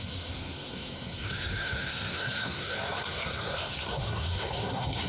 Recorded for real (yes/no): no